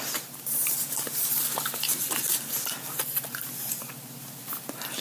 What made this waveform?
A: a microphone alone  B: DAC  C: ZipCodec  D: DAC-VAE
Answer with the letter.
A